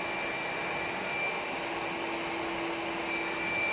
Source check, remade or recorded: recorded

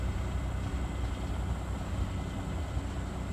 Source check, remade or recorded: recorded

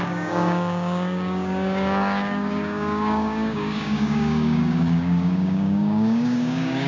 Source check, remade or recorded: remade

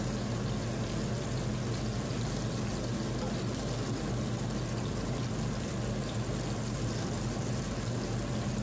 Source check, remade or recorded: recorded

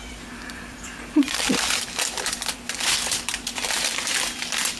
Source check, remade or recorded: remade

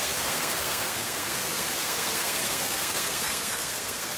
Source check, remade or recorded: remade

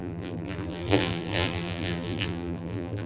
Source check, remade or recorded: remade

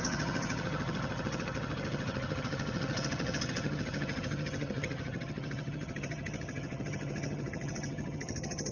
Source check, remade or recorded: remade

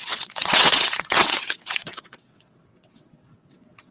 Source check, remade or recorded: remade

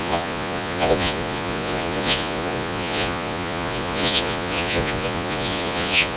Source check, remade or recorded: remade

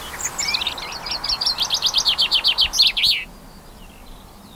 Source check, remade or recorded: recorded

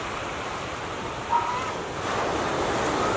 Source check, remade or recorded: recorded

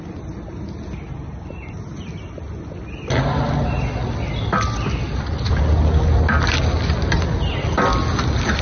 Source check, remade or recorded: recorded